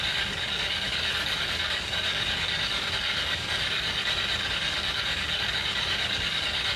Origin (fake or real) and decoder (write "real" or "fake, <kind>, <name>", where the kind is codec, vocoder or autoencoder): fake, codec, DAC